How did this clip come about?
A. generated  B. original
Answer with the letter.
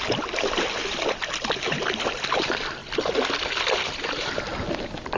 B